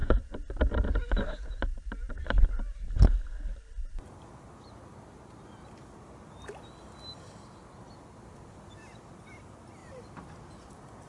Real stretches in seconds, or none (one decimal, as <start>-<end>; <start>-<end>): 4.2-9.8